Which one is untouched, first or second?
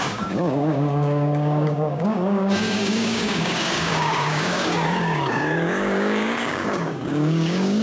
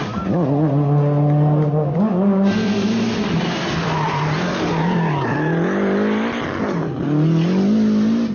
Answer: second